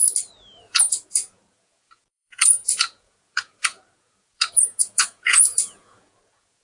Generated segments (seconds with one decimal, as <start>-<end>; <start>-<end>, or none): 0.7-6.6